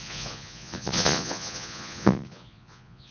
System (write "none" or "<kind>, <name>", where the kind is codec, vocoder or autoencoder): vocoder, Vocos